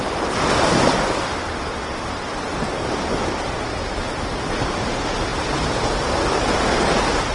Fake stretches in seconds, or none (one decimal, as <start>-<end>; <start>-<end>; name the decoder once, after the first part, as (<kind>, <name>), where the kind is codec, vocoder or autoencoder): none